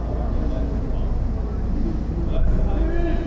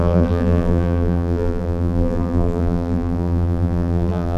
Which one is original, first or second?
first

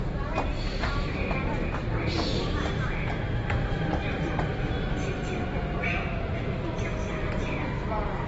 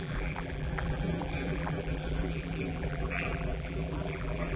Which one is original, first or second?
first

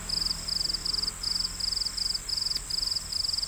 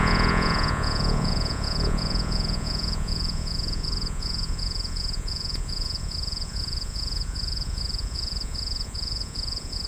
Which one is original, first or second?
first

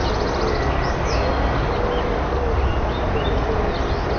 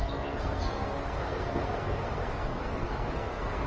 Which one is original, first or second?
first